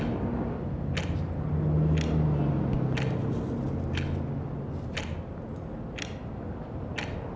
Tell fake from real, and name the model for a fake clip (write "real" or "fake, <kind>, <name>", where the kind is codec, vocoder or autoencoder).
real